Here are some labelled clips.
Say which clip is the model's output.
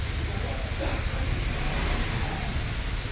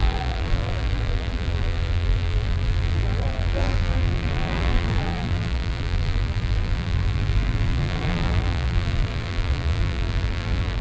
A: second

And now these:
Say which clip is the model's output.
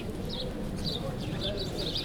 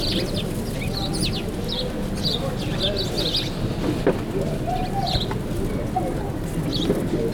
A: first